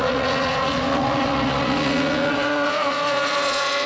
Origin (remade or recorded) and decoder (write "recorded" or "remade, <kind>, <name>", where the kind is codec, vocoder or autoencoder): remade, vocoder, Vocos